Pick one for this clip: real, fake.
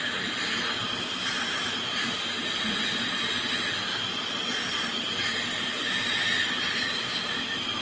real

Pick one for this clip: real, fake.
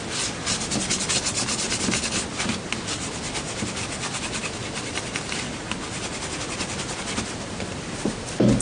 real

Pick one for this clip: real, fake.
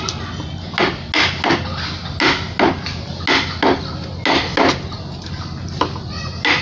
real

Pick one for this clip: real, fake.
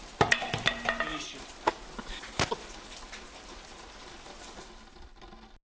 real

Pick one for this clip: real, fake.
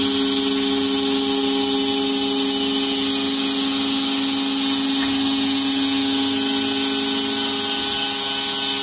real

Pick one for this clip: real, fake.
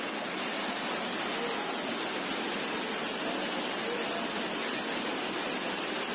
real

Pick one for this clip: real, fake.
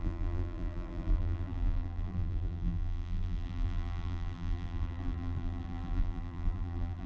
fake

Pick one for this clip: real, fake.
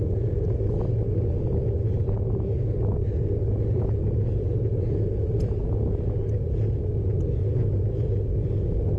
real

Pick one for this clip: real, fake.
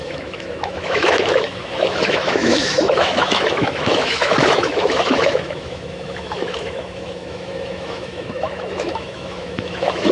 fake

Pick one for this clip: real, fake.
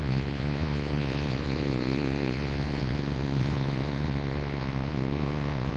fake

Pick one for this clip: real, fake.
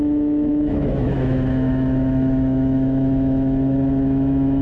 fake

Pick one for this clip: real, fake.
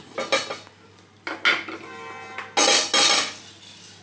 real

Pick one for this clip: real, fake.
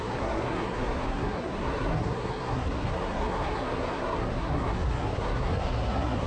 fake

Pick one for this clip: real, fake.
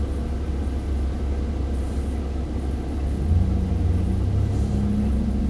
real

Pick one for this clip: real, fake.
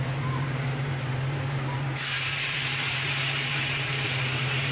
fake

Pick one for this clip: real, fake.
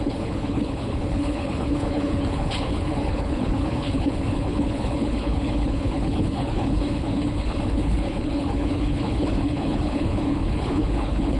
fake